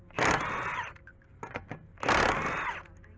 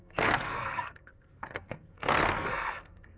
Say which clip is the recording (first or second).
first